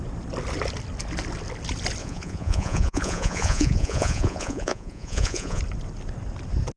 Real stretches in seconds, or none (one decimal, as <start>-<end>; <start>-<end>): 0.0-2.0; 5.6-6.8